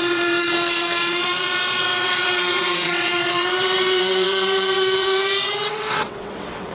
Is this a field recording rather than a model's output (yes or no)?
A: no